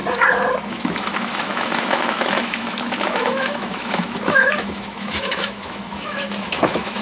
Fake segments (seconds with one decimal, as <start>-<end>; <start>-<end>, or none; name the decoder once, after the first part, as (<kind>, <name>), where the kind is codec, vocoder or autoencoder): 0.7-7.0 (autoencoder, DAC-VAE)